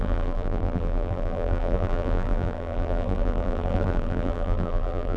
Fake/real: fake